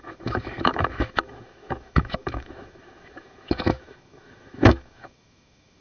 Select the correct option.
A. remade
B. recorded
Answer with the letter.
A